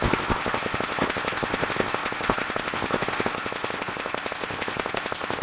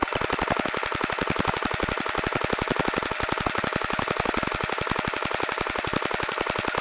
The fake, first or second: first